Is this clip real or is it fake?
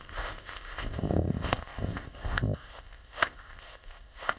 fake